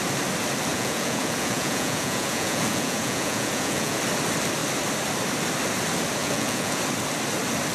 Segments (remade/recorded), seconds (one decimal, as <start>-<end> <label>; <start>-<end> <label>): 0.0-0.7 recorded; 0.7-4.0 remade; 4.0-6.2 recorded; 6.2-6.8 remade; 6.8-7.7 recorded

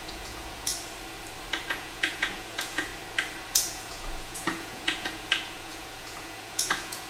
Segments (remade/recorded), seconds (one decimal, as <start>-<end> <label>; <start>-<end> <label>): 0.0-0.7 remade; 0.7-1.7 recorded; 1.7-2.9 remade; 2.9-3.5 recorded; 3.5-7.1 remade

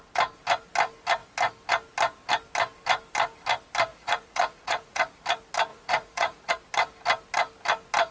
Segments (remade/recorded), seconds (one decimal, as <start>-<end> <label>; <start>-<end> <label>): 0.0-3.9 recorded; 3.9-5.0 remade; 5.0-5.7 recorded; 5.7-6.5 remade; 6.5-8.1 recorded